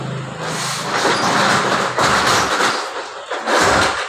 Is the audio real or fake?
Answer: real